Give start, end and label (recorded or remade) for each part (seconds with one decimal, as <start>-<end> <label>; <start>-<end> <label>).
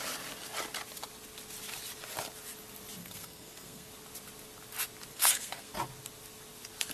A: 0.0-3.0 recorded; 3.0-3.9 remade; 3.9-5.1 recorded; 5.1-5.7 remade; 5.7-6.9 recorded